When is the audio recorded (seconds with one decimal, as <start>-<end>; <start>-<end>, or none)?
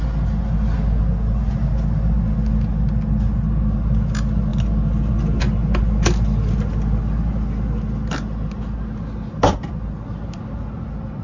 0.0-11.2